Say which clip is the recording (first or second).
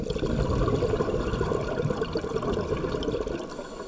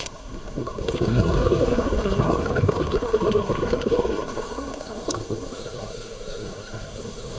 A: first